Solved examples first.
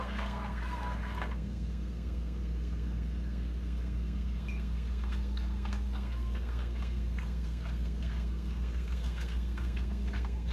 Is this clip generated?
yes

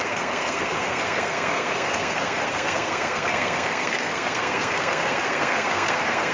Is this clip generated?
yes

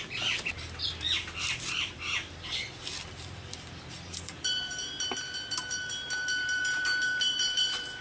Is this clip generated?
yes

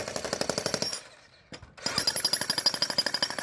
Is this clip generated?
no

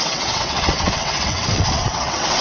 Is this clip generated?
yes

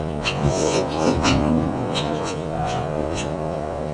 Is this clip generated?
yes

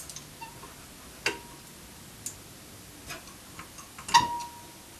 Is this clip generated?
no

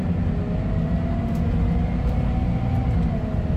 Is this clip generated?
no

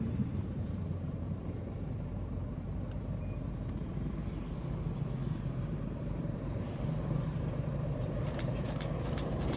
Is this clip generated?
yes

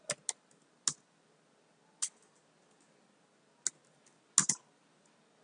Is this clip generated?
no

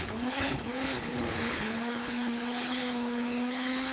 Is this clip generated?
yes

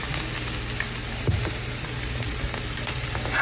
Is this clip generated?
no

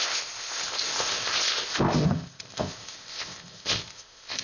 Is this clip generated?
yes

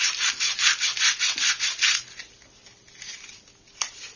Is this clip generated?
no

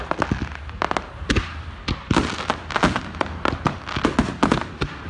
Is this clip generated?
no